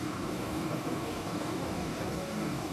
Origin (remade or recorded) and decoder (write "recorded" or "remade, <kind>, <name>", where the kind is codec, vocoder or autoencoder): remade, codec, DAC